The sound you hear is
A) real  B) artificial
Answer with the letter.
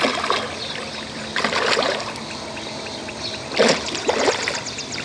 A